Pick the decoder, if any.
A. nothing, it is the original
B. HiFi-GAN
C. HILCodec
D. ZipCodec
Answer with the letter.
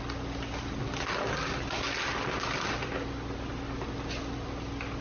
A